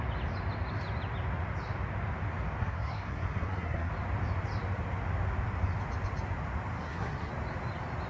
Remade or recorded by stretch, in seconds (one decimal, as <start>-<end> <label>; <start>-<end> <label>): 0.0-2.6 recorded; 2.6-3.9 remade; 3.9-6.8 recorded; 6.8-7.3 remade; 7.3-8.1 recorded